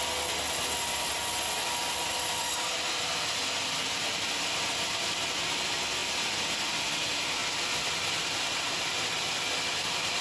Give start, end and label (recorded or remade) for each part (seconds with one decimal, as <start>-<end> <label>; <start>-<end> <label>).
0.0-10.2 recorded